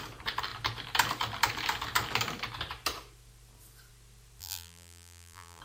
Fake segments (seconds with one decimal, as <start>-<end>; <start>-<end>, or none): 4.4-5.6